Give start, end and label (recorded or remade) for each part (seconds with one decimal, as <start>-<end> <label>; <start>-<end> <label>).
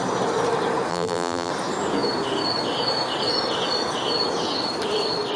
0.0-0.9 recorded; 0.9-1.5 remade; 1.5-5.4 recorded